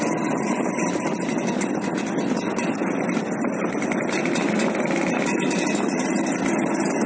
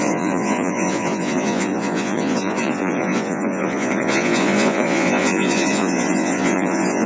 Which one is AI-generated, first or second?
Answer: second